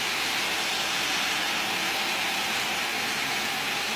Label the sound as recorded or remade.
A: recorded